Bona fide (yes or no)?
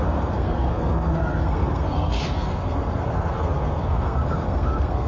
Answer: no